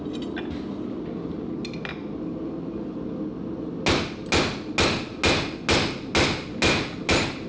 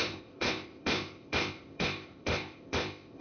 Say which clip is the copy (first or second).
second